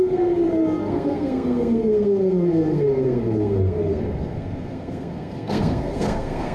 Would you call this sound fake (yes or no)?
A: yes